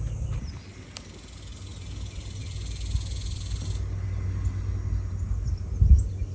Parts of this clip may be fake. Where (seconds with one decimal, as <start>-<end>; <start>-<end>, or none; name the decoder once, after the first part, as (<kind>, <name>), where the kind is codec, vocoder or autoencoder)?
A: none